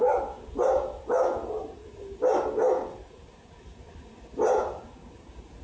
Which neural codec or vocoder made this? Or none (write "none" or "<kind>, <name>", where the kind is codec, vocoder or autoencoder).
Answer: none